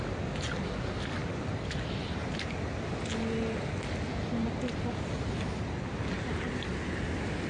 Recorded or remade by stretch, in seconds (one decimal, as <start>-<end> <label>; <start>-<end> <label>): 0.0-1.2 recorded; 1.2-2.5 remade; 2.5-7.5 recorded